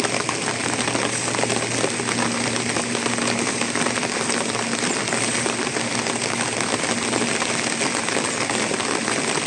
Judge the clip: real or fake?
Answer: real